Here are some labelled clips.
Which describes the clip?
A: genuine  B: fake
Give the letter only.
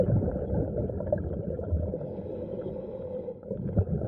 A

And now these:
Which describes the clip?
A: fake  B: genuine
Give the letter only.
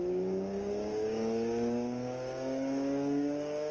A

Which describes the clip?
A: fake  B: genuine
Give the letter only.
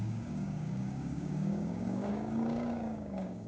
A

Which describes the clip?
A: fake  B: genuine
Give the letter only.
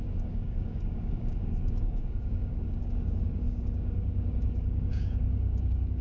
A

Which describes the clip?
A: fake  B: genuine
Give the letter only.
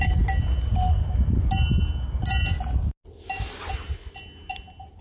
B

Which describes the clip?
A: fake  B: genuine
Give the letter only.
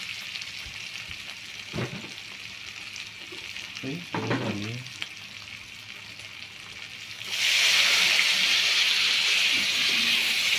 B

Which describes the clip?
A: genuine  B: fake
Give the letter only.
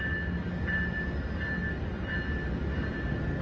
A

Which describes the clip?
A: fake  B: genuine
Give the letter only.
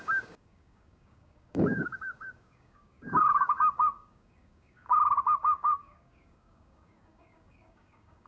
A